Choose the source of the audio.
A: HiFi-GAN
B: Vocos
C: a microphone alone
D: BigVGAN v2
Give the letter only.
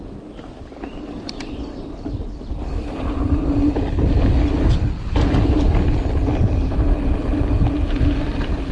C